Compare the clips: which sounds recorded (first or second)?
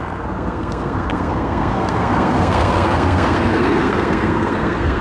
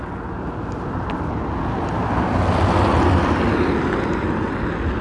second